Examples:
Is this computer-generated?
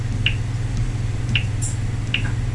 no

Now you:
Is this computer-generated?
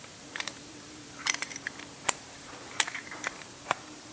yes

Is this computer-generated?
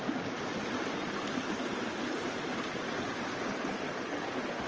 no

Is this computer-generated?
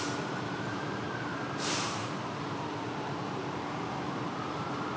yes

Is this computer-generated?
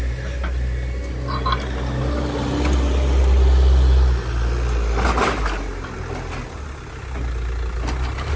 no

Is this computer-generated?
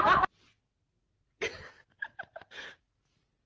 yes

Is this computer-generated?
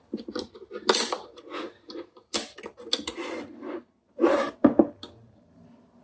no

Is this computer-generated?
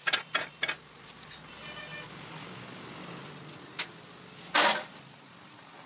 no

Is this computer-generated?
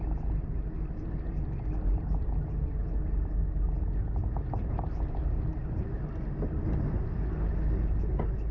no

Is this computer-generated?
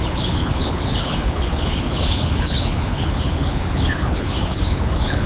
yes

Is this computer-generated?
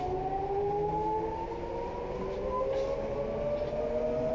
no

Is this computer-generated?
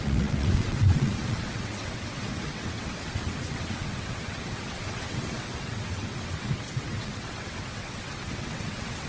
yes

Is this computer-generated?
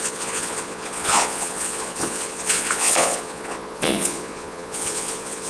yes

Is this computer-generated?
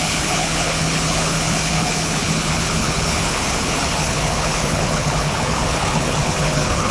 yes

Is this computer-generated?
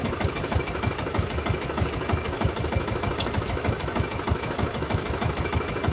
yes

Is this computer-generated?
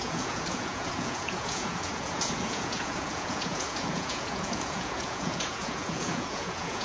yes